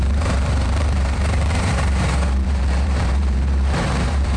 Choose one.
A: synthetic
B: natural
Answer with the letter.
A